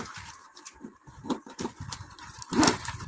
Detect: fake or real fake